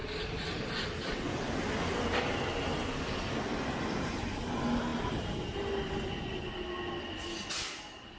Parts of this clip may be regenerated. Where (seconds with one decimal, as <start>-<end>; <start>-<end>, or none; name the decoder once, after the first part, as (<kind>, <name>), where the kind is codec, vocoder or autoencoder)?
none